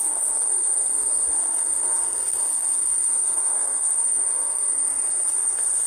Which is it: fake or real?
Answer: fake